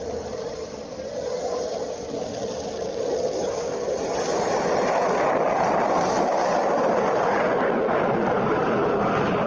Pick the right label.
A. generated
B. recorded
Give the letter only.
A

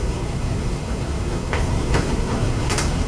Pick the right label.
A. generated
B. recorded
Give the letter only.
A